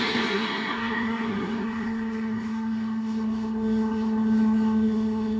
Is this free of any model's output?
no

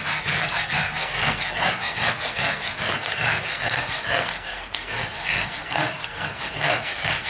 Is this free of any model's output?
no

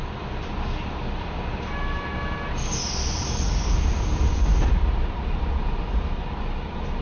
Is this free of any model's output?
yes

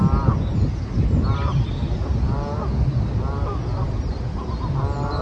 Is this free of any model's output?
yes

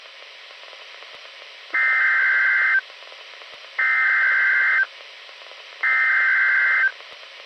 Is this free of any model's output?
yes